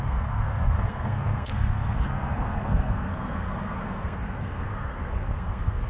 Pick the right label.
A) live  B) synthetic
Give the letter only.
B